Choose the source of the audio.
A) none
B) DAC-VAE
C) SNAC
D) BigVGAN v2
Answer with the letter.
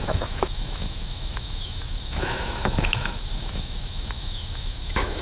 B